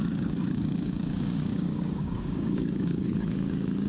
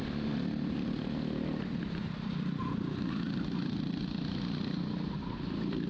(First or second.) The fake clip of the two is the first